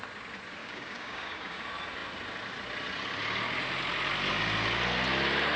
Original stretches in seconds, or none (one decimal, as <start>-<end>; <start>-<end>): 0.0-0.6; 1.6-5.6